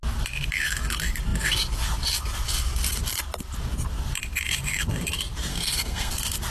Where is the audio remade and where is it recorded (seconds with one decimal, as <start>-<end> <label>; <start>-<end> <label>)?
0.0-5.5 recorded; 5.5-6.1 remade; 6.1-6.5 recorded

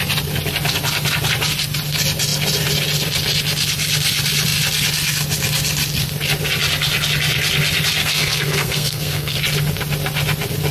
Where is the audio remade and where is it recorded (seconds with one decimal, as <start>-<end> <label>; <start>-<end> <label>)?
0.0-8.0 recorded; 8.0-9.4 remade; 9.4-10.7 recorded

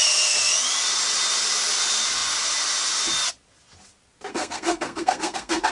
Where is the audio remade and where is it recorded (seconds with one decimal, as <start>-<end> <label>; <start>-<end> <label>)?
0.0-4.3 recorded; 4.3-5.7 remade